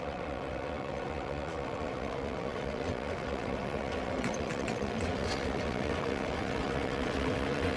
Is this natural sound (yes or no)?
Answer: no